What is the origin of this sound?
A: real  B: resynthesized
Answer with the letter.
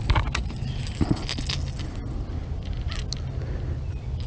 A